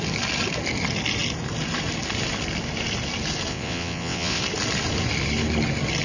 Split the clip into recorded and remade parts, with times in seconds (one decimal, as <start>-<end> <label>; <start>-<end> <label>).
0.0-3.5 recorded; 3.5-4.4 remade; 4.4-6.0 recorded